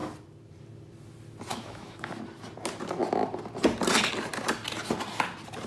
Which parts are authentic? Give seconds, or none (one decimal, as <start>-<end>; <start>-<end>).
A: 0.0-1.5; 2.1-5.7